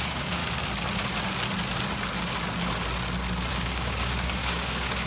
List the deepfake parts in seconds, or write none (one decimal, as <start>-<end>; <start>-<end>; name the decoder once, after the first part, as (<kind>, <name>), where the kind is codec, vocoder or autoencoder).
0.0-0.4 (codec, DAC); 3.5-5.1